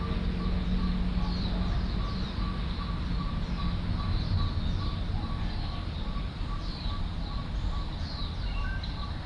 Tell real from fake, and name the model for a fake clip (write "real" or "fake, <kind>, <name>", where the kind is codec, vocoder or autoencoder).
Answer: real